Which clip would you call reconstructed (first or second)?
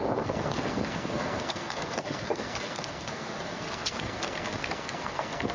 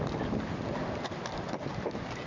first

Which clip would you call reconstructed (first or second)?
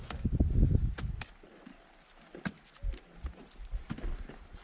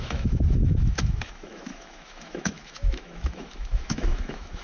second